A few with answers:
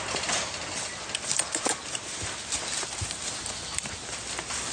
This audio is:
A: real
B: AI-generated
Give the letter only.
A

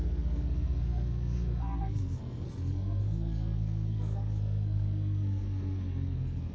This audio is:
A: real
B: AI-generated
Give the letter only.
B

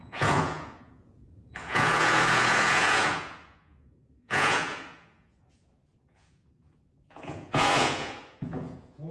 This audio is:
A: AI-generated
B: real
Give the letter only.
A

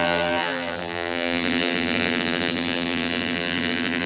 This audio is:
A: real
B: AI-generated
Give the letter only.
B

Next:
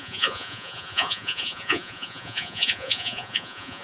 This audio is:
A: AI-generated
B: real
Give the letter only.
A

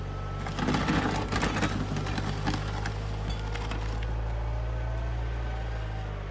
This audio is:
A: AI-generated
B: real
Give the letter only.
B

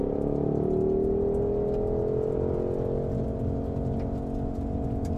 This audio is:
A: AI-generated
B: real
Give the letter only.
B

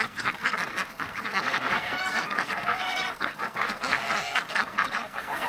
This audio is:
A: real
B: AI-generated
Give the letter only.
B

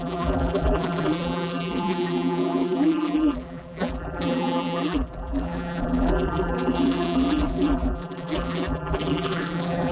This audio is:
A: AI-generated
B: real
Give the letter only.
A